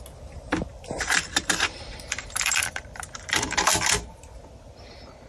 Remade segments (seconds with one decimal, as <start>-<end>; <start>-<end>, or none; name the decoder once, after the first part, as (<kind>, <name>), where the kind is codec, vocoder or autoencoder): 0.7-3.9 (vocoder, BigVGAN v2)